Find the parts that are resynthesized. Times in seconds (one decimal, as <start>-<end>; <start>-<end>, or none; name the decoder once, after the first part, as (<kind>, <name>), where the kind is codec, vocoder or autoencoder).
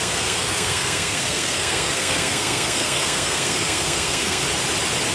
0.0-4.4 (codec, SNAC)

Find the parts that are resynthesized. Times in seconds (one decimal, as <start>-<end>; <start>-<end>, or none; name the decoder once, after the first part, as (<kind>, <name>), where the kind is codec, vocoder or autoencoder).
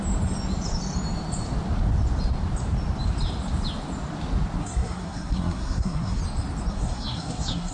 4.6-6.2 (codec, SNAC); 6.7-7.7